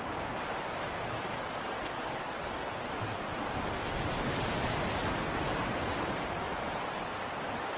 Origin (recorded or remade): recorded